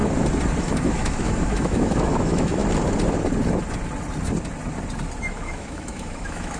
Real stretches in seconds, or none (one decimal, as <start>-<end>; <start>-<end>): 0.0-0.6; 2.6-5.2